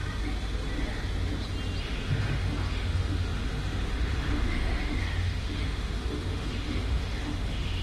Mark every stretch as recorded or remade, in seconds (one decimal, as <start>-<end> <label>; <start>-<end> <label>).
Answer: 0.0-1.8 recorded; 1.8-7.8 remade